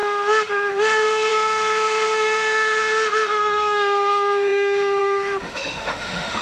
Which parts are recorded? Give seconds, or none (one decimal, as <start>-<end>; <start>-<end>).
none